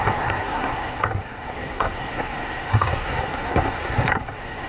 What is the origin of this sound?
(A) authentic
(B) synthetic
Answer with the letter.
B